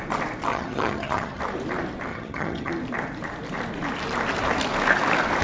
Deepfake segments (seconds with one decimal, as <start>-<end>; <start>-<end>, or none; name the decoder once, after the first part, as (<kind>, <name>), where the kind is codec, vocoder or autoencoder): 0.5-1.4 (vocoder, HiFi-GAN); 2.1-2.7